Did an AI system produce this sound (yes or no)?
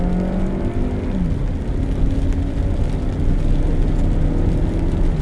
no